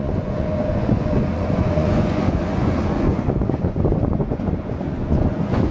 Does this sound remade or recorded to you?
remade